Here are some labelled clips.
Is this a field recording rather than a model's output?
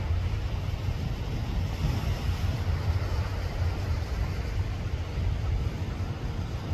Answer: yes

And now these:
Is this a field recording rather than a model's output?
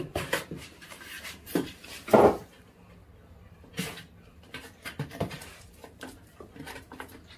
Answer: no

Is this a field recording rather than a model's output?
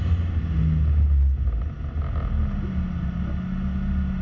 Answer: yes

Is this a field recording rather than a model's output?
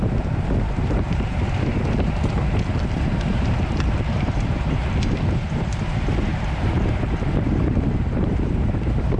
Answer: no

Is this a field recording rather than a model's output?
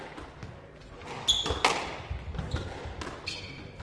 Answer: yes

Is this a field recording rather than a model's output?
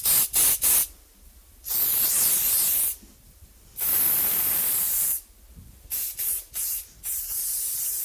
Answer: yes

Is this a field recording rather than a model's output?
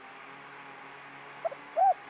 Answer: no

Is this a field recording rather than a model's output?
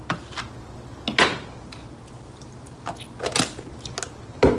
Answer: yes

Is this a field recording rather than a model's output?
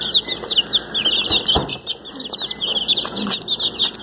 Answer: yes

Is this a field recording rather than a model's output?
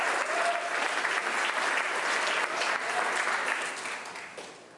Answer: yes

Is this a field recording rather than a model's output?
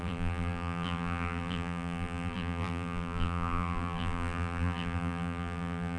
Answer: no